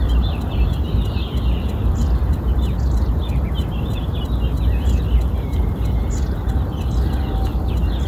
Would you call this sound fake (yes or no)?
no